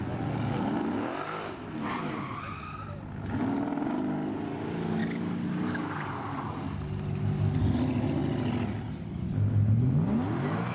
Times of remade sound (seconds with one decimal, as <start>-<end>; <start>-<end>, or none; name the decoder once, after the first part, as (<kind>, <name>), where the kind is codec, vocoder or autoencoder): 5.0-6.5 (codec, DAC)